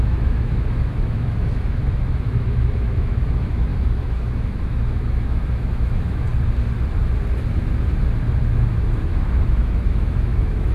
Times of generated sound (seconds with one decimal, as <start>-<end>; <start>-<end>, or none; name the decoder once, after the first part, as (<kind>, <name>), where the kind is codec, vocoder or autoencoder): 0.0-6.3 (autoencoder, DAC-VAE); 8.4-10.7